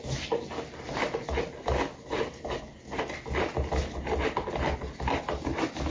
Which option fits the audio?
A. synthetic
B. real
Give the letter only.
B